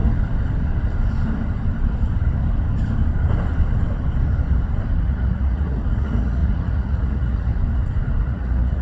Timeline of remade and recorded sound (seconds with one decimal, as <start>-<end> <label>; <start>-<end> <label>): 0.0-5.0 recorded; 5.0-7.5 remade; 7.5-8.2 recorded; 8.2-8.8 remade